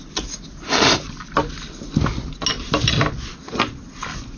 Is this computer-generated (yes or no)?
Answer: no